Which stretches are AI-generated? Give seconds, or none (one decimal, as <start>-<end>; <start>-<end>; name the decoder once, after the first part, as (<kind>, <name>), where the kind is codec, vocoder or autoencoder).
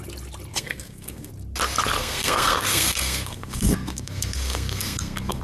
0.5-1.3 (codec, SNAC); 2.0-5.4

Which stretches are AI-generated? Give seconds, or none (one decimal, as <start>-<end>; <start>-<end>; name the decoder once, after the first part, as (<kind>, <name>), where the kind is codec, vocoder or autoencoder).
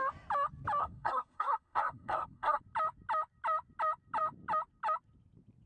0.8-2.6 (codec, SNAC)